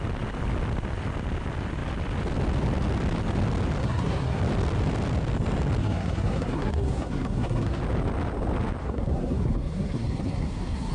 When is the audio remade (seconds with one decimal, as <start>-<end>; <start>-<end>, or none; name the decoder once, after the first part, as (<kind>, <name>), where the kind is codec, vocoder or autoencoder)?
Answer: 3.8-4.4 (codec, SNAC); 5.8-7.8; 8.8-10.9